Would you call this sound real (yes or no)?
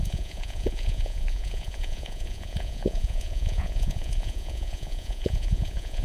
no